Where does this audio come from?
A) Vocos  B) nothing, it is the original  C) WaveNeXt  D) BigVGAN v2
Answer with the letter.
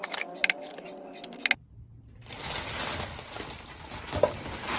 B